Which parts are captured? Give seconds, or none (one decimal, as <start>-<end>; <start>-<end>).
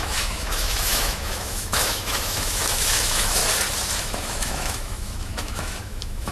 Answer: 3.4-4.0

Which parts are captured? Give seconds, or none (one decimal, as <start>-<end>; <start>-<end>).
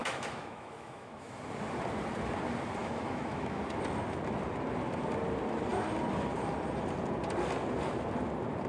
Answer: 1.4-2.8; 3.6-8.7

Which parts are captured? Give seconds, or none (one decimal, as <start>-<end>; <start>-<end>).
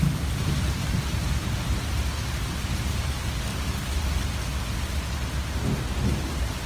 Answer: 0.0-6.7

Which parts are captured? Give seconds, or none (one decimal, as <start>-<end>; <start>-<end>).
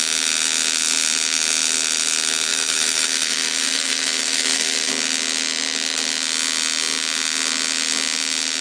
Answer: 0.0-2.5; 4.9-8.6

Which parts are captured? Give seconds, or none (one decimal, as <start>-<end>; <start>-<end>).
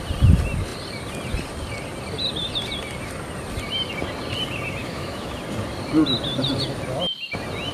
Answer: 0.0-4.8; 5.4-7.7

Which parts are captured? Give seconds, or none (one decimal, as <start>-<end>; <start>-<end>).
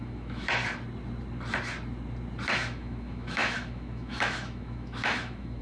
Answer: 0.6-2.5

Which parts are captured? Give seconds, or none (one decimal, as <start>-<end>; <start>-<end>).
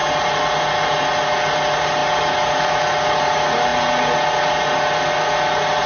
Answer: 0.0-5.9